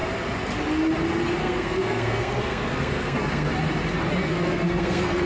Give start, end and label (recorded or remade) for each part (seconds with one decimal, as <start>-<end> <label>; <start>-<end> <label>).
0.0-1.4 recorded; 1.4-3.5 remade; 3.5-4.2 recorded; 4.2-5.3 remade